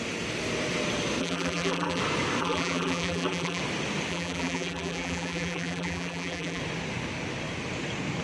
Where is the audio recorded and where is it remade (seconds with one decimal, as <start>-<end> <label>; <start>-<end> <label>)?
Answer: 0.0-1.2 recorded; 1.2-2.0 remade; 2.0-2.4 recorded; 2.4-3.6 remade; 3.6-4.1 recorded; 4.1-6.6 remade; 6.6-8.2 recorded